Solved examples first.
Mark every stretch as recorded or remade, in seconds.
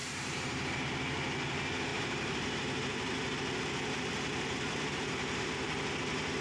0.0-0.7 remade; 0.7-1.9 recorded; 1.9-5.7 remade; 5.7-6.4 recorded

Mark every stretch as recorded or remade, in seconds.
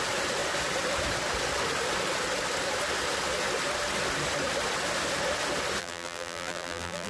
0.0-5.8 recorded; 5.8-7.1 remade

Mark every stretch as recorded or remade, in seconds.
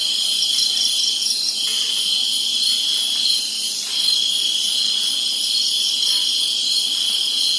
0.0-7.6 remade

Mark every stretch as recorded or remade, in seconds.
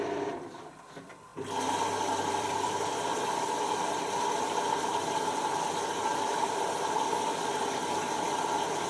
0.0-1.3 remade; 1.3-2.3 recorded; 2.3-8.9 remade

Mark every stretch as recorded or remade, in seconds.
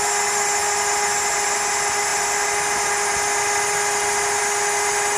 0.0-5.2 recorded